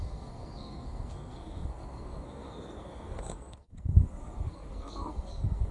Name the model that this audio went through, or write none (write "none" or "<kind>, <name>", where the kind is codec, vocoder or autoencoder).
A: codec, SNAC